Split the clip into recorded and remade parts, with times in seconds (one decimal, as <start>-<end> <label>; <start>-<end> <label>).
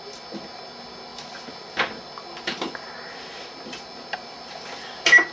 0.0-5.3 recorded